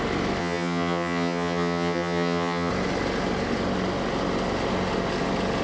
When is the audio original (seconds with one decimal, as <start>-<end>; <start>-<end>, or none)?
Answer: 0.0-0.4; 2.7-5.6